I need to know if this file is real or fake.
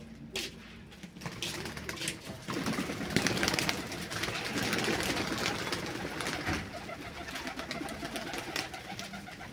real